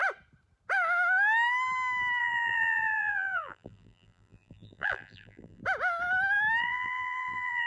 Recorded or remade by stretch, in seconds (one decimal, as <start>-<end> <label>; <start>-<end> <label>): 0.0-2.2 recorded; 2.2-5.6 remade; 5.6-6.6 recorded; 6.6-7.7 remade